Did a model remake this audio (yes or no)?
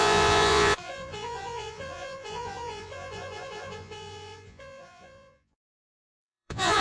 yes